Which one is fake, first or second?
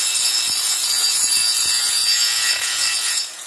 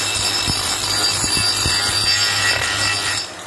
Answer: first